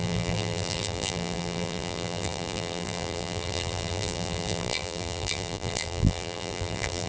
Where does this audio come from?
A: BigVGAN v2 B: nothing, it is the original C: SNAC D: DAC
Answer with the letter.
A